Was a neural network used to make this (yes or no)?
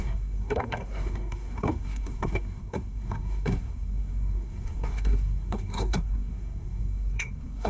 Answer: yes